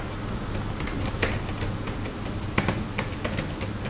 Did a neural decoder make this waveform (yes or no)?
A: no